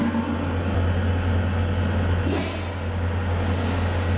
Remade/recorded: recorded